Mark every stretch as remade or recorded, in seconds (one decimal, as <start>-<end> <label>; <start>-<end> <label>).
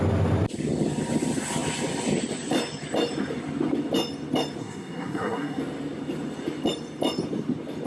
0.0-4.6 recorded; 4.6-5.6 remade; 5.6-7.9 recorded